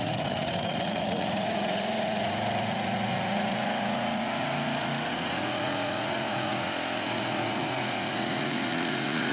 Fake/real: fake